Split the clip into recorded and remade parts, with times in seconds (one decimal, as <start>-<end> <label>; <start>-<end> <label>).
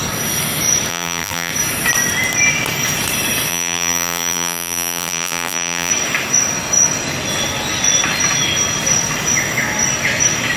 0.0-0.9 recorded; 0.9-1.5 remade; 1.5-3.5 recorded; 3.5-5.9 remade; 5.9-10.6 recorded